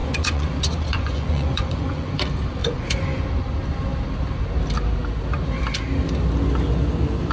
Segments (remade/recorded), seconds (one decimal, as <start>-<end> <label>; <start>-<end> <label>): 0.0-2.1 remade; 2.1-2.6 recorded; 2.6-3.2 remade; 3.2-7.3 recorded